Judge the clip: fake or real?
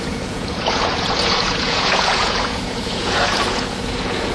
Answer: fake